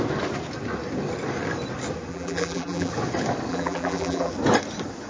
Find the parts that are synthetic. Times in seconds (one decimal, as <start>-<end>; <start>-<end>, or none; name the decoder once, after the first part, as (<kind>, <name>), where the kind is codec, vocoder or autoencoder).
2.1-2.9 (vocoder, BigVGAN v2); 3.5-4.3